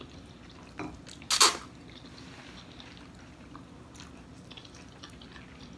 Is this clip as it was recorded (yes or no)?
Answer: yes